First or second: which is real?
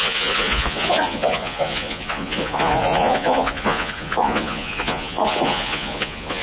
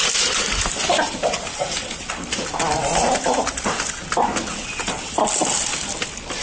second